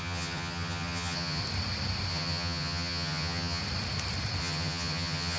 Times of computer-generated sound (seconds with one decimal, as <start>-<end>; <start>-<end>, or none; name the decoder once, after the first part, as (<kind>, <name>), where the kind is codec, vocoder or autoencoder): 0.0-1.4 (vocoder, HiFi-GAN); 2.1-3.6; 4.4-5.4